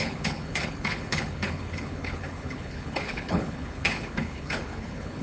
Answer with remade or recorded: remade